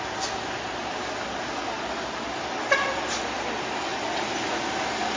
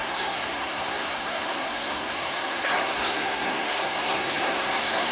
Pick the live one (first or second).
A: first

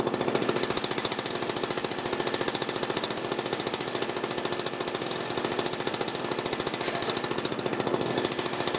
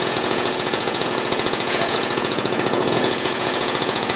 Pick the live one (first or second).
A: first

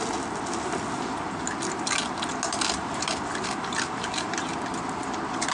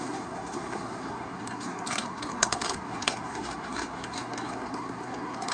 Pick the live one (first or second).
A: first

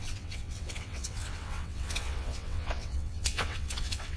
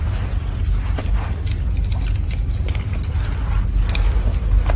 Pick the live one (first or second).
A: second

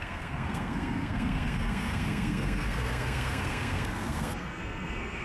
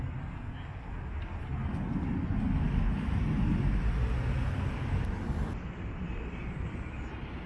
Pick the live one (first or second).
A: second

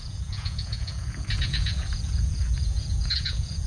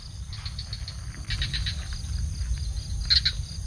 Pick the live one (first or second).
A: second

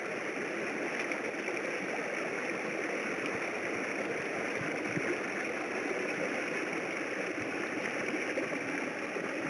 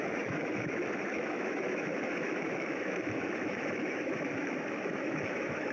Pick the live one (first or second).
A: first